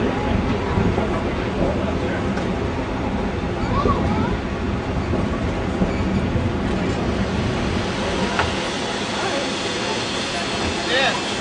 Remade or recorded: recorded